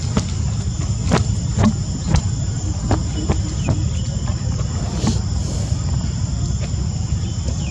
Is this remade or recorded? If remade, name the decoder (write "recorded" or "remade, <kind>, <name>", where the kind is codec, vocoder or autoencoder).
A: recorded